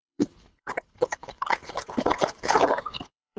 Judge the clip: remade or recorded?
remade